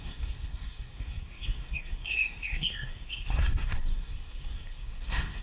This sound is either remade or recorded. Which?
remade